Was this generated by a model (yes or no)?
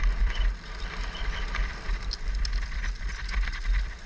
no